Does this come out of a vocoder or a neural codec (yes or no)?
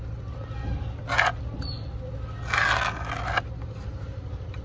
no